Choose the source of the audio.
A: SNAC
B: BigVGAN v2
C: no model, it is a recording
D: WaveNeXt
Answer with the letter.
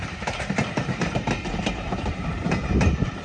B